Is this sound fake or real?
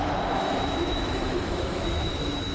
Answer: fake